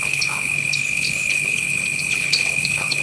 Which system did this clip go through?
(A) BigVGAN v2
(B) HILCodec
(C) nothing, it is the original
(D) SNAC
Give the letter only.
B